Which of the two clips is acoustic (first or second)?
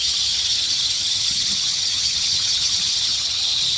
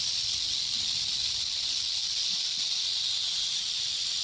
second